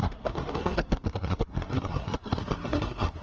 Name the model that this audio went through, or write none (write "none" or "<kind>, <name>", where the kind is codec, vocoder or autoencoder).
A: codec, SNAC